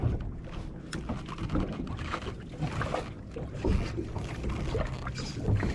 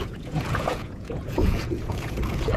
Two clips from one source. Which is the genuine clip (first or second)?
first